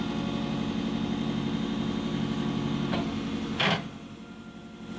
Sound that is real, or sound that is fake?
real